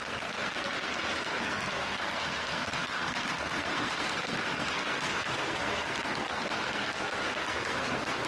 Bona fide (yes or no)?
no